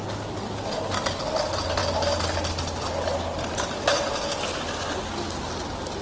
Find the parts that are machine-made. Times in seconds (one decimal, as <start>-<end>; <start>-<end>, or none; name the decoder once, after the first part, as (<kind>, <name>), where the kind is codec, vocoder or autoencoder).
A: 0.0-1.2 (vocoder, BigVGAN v2); 1.8-5.4